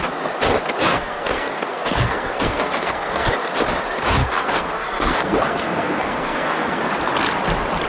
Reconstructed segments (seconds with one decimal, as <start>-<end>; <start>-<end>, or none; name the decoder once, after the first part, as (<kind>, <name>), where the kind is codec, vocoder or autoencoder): 0.9-3.3 (codec, SNAC); 4.2-6.8